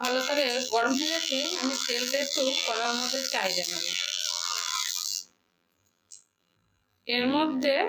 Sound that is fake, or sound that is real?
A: fake